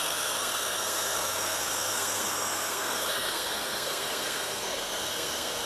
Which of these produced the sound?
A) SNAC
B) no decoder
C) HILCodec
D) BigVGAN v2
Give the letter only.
A